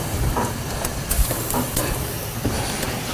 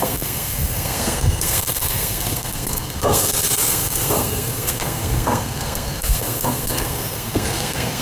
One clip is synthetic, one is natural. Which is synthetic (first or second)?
second